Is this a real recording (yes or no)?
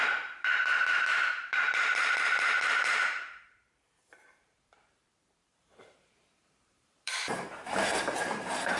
no